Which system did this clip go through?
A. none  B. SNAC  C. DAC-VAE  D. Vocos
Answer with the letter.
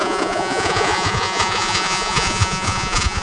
D